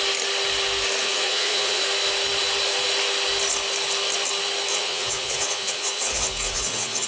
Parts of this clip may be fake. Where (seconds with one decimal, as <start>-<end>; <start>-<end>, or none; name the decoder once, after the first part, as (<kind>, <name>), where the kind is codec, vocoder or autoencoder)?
1.0-1.8 (vocoder, Vocos); 4.7-7.1